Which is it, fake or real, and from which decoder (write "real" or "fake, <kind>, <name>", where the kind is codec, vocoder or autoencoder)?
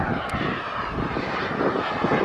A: real